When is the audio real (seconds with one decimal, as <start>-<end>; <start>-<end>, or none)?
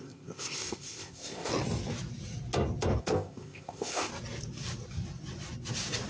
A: 1.5-3.0; 4.1-6.1